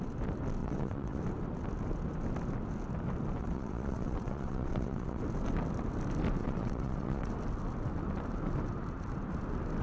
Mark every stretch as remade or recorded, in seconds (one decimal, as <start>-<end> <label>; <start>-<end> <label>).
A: 0.0-0.6 recorded; 0.6-1.2 remade; 1.2-3.4 recorded; 3.4-5.2 remade; 5.2-6.4 recorded; 6.4-7.3 remade; 7.3-9.8 recorded